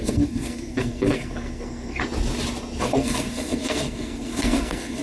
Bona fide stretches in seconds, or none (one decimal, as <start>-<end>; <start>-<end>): 2.0-2.8